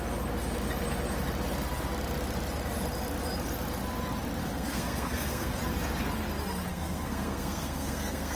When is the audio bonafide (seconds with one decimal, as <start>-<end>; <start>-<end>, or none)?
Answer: 0.0-4.4; 5.6-6.7